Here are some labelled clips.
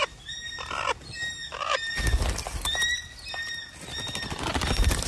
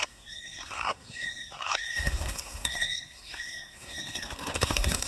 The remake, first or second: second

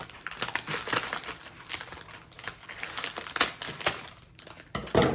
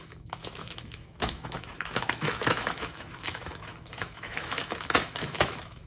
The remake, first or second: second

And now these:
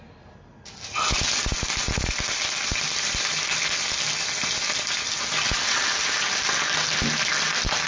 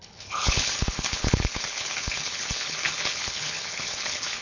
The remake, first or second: second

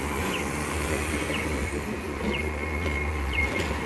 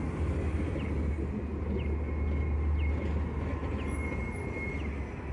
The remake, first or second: first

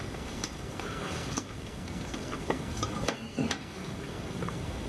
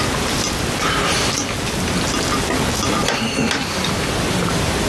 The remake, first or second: first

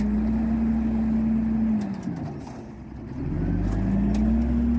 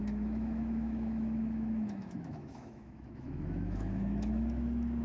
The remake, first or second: second